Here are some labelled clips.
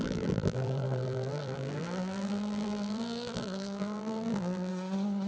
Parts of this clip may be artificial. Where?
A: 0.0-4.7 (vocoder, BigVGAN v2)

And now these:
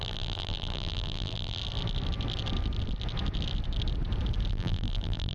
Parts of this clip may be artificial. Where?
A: 0.0-1.6 (vocoder, BigVGAN v2); 4.5-5.3

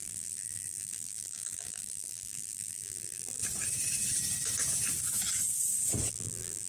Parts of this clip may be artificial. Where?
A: 0.0-3.4 (vocoder, BigVGAN v2); 6.1-6.7

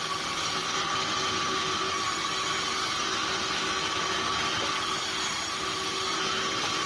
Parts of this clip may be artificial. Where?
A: none

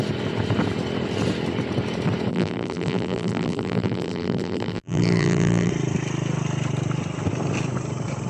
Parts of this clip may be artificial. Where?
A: 2.3-5.7 (vocoder, BigVGAN v2)